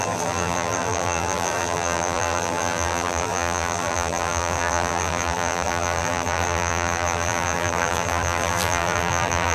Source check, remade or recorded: remade